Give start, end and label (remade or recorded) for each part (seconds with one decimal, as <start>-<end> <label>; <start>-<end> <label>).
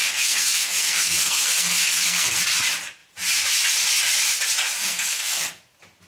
0.0-2.4 remade; 2.4-4.8 recorded; 4.8-5.6 remade; 5.6-6.1 recorded